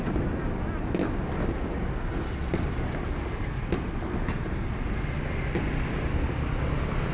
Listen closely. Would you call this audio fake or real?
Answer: real